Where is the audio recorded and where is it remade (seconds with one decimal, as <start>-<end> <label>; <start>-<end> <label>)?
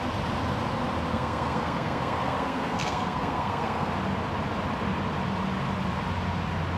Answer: 0.0-1.1 recorded; 1.1-3.9 remade; 3.9-6.8 recorded